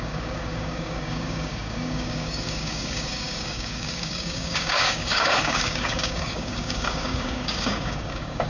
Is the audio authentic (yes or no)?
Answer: no